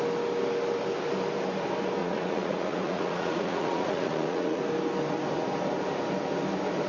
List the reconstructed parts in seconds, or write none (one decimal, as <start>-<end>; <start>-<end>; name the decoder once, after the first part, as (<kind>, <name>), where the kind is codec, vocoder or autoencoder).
2.0-4.6 (vocoder, Vocos)